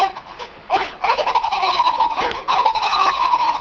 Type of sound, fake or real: fake